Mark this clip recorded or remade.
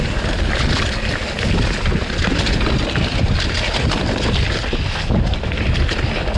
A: recorded